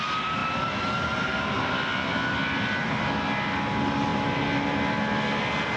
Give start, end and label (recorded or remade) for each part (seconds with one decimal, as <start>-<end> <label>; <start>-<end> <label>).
0.0-5.8 recorded